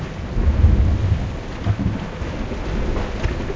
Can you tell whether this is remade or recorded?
recorded